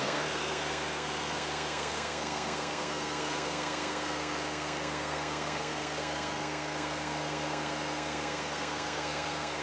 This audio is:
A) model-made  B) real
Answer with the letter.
A